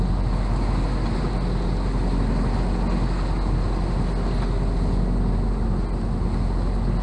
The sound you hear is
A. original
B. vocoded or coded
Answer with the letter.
A